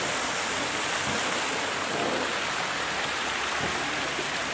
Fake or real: real